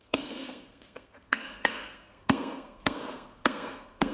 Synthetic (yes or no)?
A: yes